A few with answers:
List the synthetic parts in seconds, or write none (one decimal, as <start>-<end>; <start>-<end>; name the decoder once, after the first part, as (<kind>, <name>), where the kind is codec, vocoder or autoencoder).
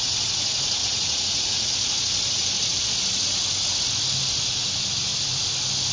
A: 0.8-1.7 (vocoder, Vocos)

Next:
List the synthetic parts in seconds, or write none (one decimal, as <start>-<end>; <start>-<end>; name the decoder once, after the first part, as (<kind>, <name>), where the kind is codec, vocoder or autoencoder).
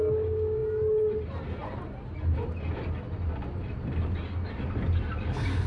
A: none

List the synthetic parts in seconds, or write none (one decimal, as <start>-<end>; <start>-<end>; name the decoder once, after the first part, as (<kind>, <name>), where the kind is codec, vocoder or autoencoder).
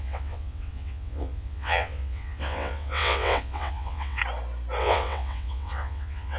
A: 0.0-4.2 (vocoder, WaveNeXt); 4.8-6.4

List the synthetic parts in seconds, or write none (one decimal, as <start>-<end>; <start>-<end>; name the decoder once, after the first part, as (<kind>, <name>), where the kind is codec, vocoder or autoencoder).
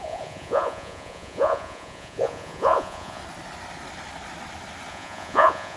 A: 0.0-3.2 (vocoder, Vocos); 4.9-5.8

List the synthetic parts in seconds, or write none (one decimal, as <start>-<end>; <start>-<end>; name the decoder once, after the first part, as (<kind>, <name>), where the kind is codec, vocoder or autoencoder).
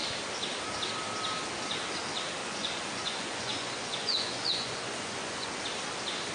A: 2.4-5.6 (vocoder, Vocos)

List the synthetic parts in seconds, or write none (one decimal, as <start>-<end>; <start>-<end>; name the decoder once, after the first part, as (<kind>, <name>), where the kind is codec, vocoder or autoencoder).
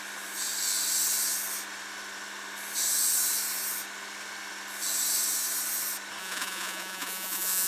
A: 6.2-7.7 (vocoder, Vocos)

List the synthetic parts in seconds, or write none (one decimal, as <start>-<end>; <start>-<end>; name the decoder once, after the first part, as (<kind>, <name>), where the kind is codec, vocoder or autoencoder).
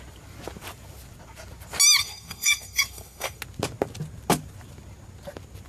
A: 2.0-3.4 (codec, SNAC)